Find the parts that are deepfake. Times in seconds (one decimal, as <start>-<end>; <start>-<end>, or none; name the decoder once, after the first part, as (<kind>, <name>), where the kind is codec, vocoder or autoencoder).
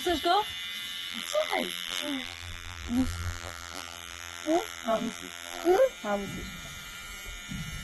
1.1-5.8 (vocoder, BigVGAN v2)